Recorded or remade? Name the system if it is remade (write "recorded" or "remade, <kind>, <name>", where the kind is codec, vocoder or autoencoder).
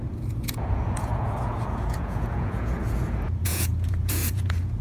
remade, vocoder, Vocos